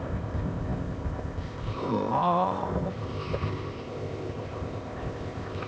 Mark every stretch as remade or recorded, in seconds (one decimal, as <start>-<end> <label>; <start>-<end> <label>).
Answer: 0.0-5.7 remade